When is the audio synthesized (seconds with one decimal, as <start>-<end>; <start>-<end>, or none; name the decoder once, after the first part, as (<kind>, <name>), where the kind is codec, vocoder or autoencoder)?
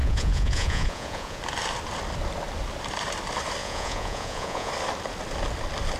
0.0-1.4 (vocoder, Vocos); 3.6-4.7